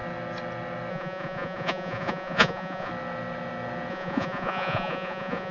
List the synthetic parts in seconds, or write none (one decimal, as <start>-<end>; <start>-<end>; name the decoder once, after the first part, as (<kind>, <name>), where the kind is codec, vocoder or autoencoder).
0.9-2.9 (vocoder, Vocos); 3.9-5.5